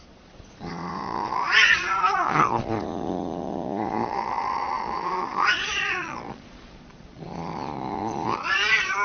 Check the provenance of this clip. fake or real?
fake